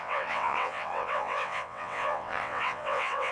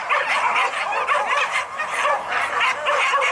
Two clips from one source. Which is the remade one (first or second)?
first